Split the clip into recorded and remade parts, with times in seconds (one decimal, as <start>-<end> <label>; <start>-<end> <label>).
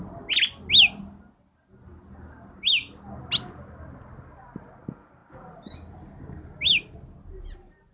0.0-7.9 recorded